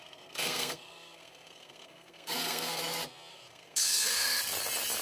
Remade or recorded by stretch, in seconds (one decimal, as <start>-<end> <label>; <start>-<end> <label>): 0.0-2.8 remade; 2.8-3.3 recorded; 3.3-4.4 remade; 4.4-5.0 recorded